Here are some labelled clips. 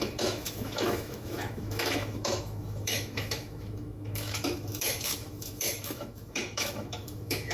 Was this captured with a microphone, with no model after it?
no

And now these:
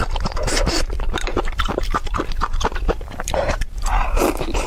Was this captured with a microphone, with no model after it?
no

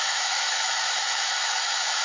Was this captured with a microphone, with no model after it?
no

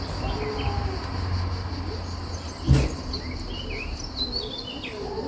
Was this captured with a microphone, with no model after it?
yes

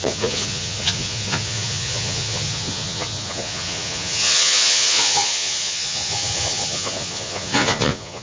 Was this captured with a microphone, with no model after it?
no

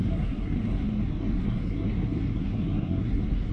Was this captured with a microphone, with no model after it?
no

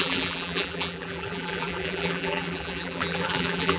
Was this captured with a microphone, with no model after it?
no